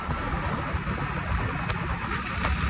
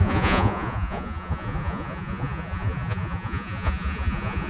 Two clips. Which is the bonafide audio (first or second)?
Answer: first